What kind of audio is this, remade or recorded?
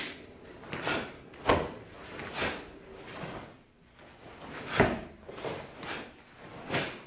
recorded